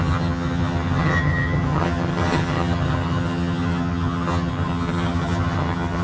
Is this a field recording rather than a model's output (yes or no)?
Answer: no